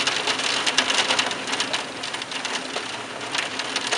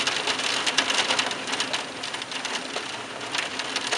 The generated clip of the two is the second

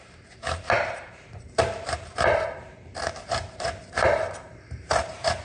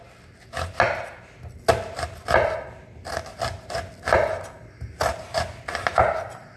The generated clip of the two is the first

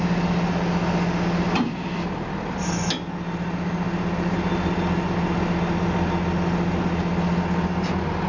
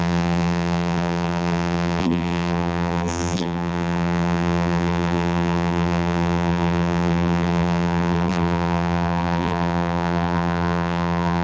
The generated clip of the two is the second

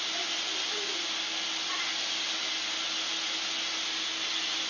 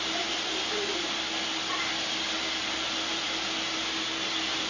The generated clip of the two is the second